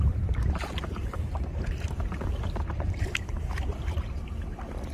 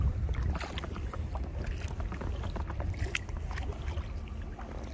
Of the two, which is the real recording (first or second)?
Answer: second